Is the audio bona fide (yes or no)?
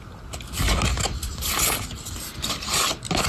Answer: yes